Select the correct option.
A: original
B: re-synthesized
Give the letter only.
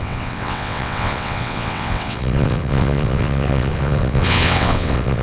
B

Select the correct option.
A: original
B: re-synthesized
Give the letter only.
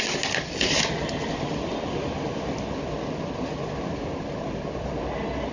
A